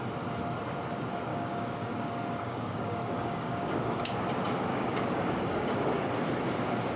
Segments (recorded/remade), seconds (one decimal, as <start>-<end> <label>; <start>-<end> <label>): 0.0-1.3 recorded; 1.3-4.2 remade; 4.2-4.7 recorded; 4.7-6.1 remade; 6.1-7.0 recorded